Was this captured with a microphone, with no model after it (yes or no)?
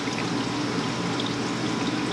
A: yes